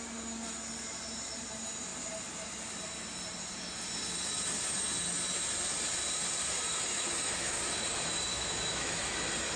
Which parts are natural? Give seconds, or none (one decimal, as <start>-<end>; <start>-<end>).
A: 0.0-6.9; 7.8-8.3; 9.1-9.6